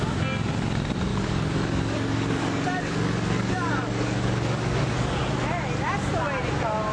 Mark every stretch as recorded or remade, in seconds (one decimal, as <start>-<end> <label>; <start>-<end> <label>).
0.0-1.1 recorded; 1.1-5.2 remade; 5.2-6.9 recorded